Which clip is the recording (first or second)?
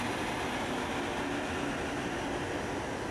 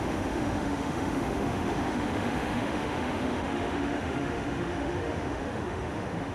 first